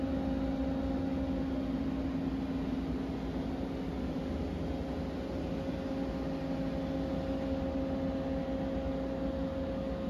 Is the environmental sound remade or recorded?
recorded